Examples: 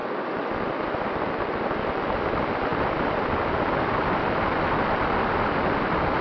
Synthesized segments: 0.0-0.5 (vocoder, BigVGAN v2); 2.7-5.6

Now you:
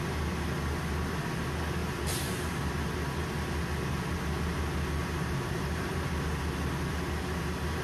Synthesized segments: 1.8-2.7 (vocoder, BigVGAN v2); 5.0-6.1

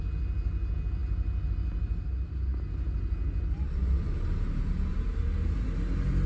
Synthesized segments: none

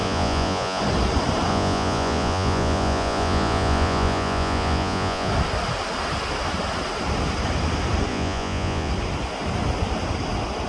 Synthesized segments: 0.0-0.8 (vocoder, Vocos); 1.5-5.3; 8.1-8.9

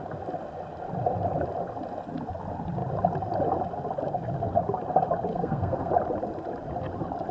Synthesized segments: 5.3-5.9 (codec, SNAC)

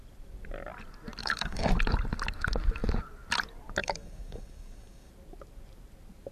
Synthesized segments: 1.2-1.7 (codec, DAC); 3.8-5.1

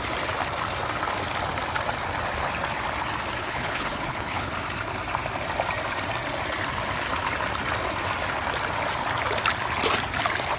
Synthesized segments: 3.4-4.5 (codec, HILCodec)